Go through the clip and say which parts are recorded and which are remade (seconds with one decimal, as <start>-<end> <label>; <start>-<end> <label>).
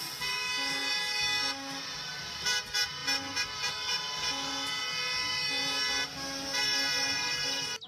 0.0-7.9 recorded